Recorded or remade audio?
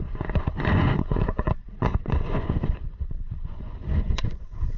remade